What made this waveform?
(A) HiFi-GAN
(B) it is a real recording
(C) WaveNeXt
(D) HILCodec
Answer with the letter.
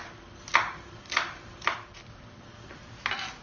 B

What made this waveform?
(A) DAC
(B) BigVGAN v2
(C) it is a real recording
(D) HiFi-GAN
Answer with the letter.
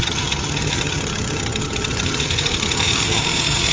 D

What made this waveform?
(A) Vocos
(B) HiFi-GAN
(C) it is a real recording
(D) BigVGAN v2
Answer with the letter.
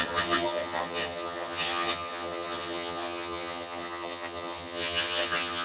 B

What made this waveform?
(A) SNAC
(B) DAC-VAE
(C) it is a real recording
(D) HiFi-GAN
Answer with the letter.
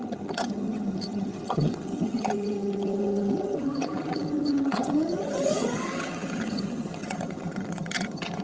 D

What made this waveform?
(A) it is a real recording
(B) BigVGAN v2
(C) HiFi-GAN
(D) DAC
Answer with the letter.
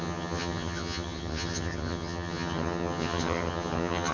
C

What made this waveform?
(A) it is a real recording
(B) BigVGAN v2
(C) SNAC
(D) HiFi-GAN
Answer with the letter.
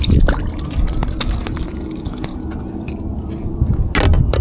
A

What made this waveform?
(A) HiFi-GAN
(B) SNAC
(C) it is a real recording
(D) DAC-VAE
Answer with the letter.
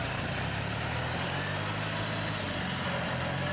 C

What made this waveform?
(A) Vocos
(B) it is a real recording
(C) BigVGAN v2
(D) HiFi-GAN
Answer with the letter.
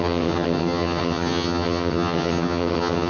D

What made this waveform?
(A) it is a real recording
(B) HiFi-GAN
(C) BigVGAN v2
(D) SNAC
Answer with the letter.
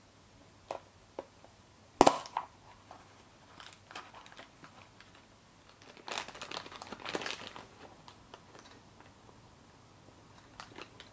A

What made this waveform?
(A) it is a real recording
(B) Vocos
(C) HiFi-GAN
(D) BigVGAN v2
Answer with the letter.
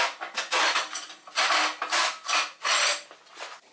A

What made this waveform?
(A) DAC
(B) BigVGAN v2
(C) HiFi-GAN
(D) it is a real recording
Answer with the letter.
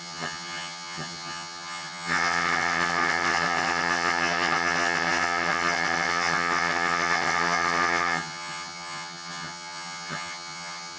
C